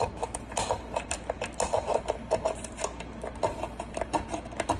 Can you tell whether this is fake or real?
real